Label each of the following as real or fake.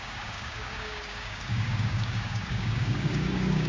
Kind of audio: fake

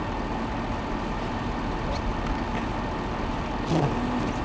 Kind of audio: real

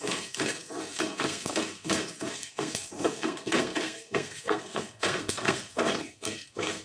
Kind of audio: fake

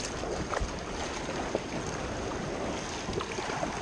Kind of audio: real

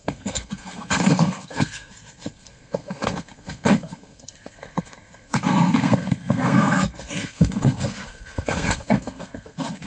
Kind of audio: fake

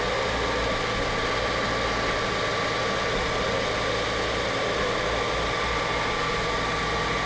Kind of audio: real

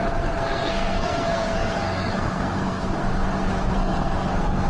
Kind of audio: fake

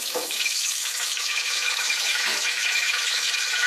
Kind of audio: fake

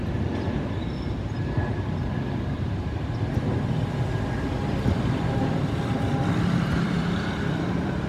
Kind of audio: fake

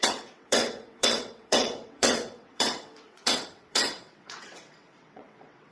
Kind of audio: fake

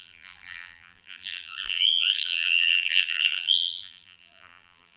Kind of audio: fake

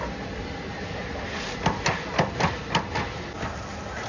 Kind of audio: real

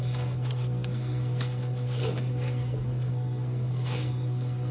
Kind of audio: fake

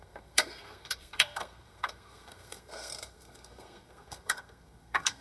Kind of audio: fake